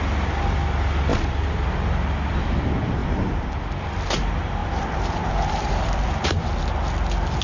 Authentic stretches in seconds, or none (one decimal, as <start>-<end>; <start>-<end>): 0.0-1.1; 1.7-3.0; 3.5-4.6; 6.6-7.4